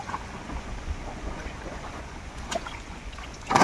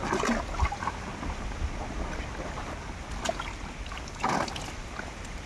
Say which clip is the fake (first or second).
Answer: first